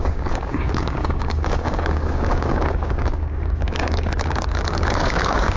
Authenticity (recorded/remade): remade